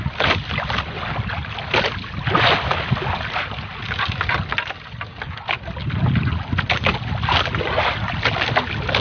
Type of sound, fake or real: real